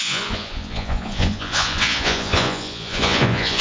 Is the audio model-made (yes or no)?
yes